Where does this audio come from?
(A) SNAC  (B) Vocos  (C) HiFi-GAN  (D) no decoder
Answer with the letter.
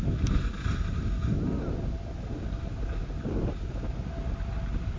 D